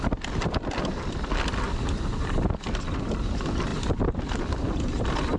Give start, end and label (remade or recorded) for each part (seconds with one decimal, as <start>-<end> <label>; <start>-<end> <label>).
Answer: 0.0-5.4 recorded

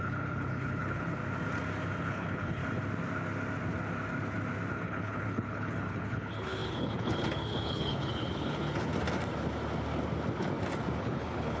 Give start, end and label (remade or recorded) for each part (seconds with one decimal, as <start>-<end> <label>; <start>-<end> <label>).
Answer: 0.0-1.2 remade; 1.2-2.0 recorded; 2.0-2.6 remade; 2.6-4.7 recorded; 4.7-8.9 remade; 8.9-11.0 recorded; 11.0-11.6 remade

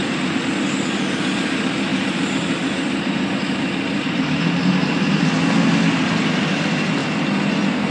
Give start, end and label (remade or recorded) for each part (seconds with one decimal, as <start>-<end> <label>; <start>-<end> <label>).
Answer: 0.0-7.9 recorded